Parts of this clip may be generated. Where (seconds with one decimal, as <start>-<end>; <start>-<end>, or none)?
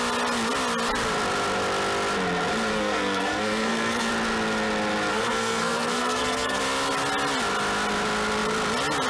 2.7-4.1; 5.1-6.6